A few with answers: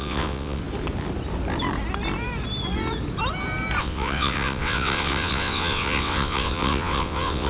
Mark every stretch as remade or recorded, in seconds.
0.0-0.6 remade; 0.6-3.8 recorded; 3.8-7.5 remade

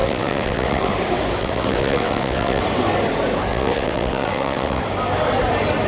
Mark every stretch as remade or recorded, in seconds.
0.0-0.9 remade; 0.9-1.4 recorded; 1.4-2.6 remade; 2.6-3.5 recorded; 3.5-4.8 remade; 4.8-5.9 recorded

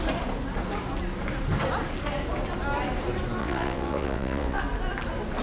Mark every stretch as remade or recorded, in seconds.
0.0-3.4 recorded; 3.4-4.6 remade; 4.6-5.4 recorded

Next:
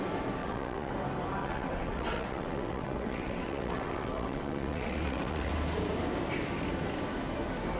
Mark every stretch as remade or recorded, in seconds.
0.0-0.4 recorded; 0.4-0.9 remade; 0.9-1.4 recorded; 1.4-5.5 remade; 5.5-7.8 recorded

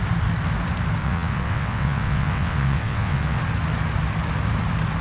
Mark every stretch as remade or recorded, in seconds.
0.0-1.0 recorded; 1.0-3.4 remade; 3.4-5.0 recorded

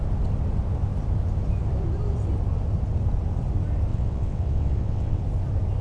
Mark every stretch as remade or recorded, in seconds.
0.0-3.9 recorded; 3.9-5.2 remade; 5.2-5.8 recorded